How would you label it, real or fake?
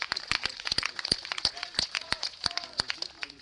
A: fake